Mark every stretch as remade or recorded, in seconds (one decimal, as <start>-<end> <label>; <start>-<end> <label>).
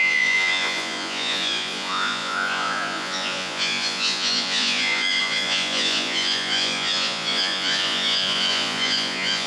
0.0-9.5 remade